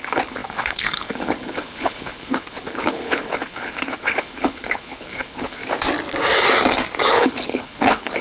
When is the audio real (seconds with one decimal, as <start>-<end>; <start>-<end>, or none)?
5.6-7.1